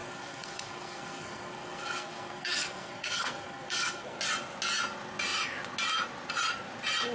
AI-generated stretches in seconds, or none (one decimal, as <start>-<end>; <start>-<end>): 0.0-4.2

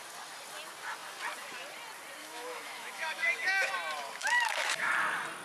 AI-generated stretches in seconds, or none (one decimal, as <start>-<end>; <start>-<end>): 2.2-3.7; 4.2-4.9

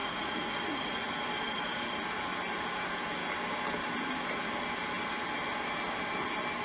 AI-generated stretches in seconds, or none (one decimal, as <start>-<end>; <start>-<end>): 0.0-1.1